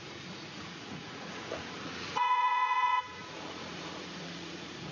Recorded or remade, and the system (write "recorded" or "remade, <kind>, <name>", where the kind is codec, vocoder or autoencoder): remade, vocoder, Vocos